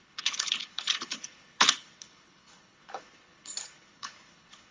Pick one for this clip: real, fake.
fake